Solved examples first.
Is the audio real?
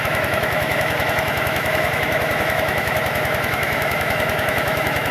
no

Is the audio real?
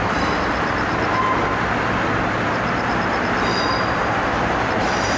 yes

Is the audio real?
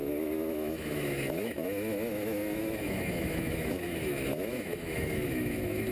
no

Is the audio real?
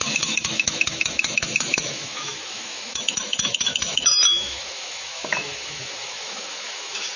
no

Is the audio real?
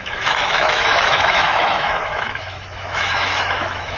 no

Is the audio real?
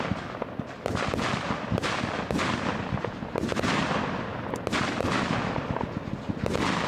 yes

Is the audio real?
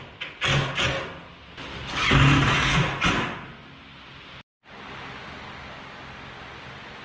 yes